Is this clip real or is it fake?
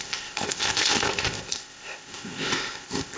fake